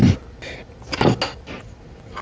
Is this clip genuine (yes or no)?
yes